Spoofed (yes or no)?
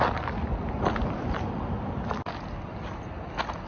no